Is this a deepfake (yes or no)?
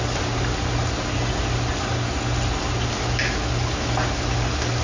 no